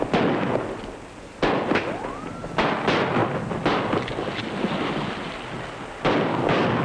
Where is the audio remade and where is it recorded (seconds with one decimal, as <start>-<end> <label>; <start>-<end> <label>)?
0.0-6.8 recorded